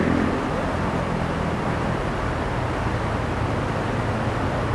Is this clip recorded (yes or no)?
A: yes